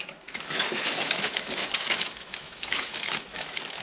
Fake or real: fake